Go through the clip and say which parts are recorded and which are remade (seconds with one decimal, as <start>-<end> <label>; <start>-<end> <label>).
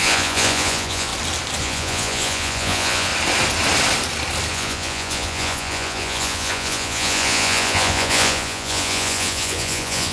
0.0-1.1 remade; 1.1-1.6 recorded; 1.6-3.1 remade; 3.1-4.5 recorded; 4.5-10.1 remade